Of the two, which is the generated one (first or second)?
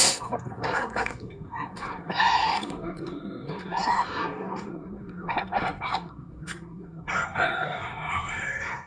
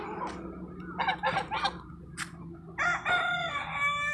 first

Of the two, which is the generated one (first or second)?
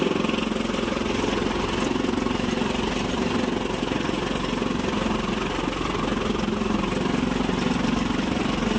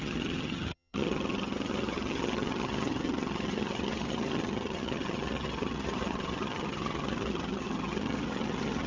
second